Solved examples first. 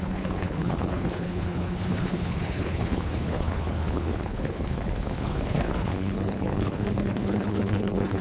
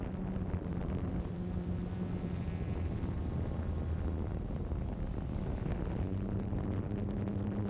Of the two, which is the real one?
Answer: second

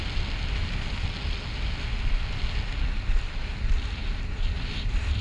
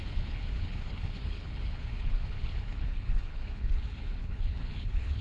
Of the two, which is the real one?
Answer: first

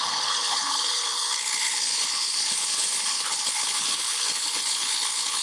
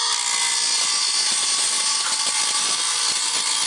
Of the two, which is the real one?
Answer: second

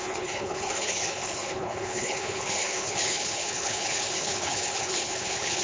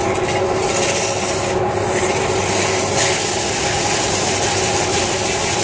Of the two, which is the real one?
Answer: second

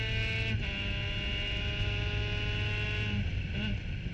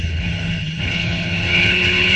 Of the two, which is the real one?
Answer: first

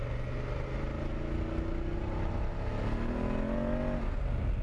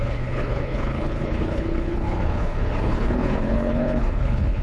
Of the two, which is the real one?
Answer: first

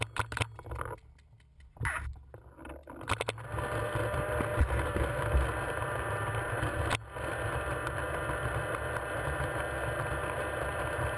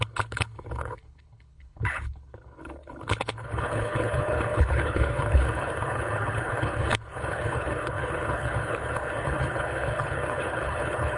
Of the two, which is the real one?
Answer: first